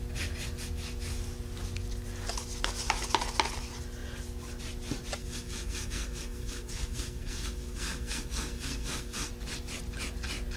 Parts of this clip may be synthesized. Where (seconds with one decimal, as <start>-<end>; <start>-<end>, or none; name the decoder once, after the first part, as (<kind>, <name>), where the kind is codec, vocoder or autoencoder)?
5.2-9.3 (codec, SNAC)